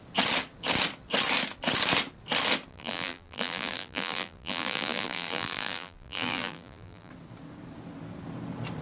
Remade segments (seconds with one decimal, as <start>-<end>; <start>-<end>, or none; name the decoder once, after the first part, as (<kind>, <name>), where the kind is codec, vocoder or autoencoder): 2.7-7.1 (vocoder, BigVGAN v2)